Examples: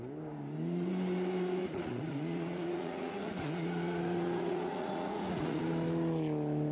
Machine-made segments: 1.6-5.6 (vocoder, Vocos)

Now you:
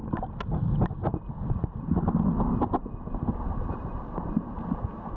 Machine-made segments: none